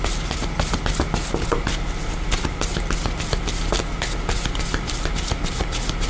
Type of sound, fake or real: real